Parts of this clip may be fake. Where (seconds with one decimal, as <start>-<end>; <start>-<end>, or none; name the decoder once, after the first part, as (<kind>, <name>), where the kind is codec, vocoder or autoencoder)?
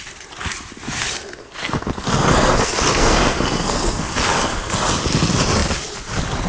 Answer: 1.4-4.8 (codec, SNAC)